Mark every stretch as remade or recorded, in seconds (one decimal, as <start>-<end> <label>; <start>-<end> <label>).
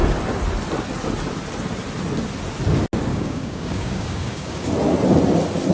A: 0.0-3.1 recorded; 3.1-4.7 remade; 4.7-5.7 recorded